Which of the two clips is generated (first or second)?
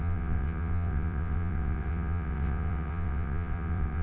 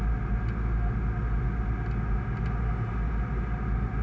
first